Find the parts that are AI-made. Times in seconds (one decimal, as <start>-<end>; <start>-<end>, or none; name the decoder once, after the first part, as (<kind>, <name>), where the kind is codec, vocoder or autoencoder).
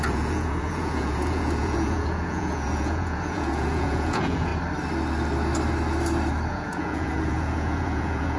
0.0-4.5 (vocoder, Vocos); 6.5-8.4